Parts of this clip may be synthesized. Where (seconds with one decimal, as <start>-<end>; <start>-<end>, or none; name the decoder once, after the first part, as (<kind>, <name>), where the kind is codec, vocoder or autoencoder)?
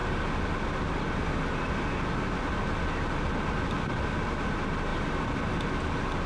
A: none